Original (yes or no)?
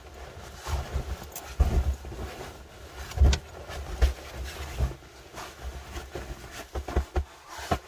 yes